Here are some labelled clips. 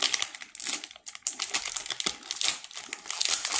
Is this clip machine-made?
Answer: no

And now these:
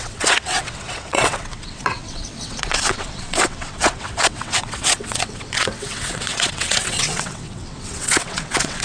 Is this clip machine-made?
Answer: yes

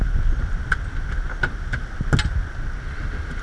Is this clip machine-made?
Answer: no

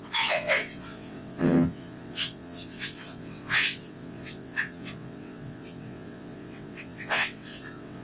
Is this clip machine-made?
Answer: yes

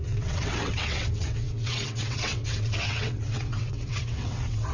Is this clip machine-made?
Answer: yes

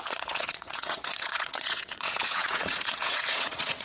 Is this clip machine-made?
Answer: yes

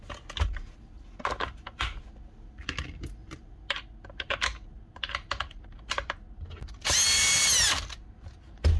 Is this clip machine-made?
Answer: no